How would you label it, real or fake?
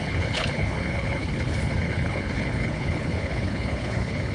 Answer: fake